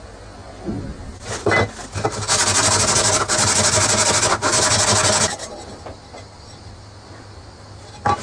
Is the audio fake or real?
real